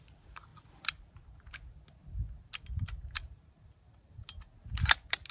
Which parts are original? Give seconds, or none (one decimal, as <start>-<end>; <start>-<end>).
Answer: 0.5-3.1; 4.2-5.3